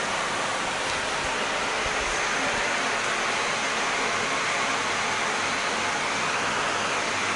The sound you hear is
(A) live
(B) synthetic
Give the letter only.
A